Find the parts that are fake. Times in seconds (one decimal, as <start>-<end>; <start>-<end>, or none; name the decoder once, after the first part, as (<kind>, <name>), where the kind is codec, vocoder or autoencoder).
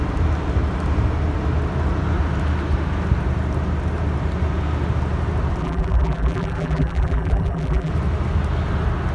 5.6-7.9 (vocoder, BigVGAN v2)